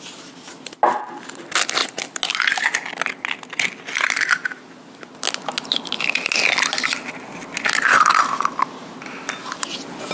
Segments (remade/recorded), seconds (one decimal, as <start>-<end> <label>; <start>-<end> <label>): 0.0-10.1 recorded